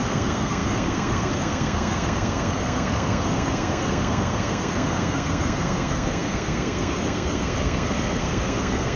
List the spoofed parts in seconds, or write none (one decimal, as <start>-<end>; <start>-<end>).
0.0-9.0